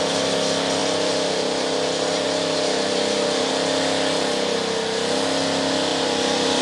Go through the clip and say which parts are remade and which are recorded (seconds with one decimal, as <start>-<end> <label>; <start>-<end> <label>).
0.0-0.8 recorded; 0.8-3.5 remade; 3.5-5.9 recorded; 5.9-6.6 remade

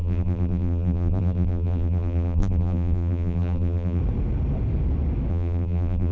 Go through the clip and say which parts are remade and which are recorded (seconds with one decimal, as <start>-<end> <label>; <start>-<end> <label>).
0.0-4.0 remade; 4.0-5.3 recorded; 5.3-6.1 remade

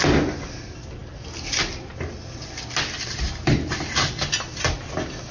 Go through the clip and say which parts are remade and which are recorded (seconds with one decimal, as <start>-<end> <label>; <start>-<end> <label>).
0.0-5.3 recorded

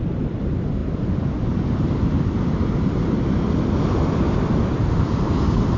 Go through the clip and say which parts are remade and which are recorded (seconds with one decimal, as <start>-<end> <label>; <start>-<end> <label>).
0.0-5.8 recorded